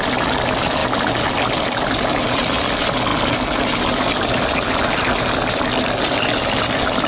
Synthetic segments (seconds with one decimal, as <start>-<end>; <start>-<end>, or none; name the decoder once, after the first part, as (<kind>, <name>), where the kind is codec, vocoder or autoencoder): none